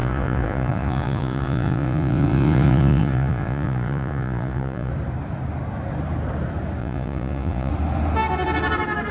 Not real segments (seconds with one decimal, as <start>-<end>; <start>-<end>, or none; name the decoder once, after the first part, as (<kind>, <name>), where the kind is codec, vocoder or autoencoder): 0.0-4.9 (vocoder, Vocos); 6.8-7.7